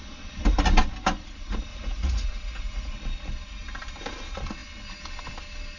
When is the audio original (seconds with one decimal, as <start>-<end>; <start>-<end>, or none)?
0.0-1.7; 2.9-5.8